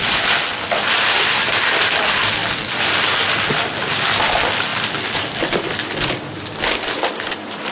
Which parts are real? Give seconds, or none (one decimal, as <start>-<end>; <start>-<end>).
0.0-0.5; 2.0-4.7; 5.2-7.7